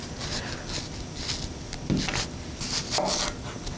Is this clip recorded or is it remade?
recorded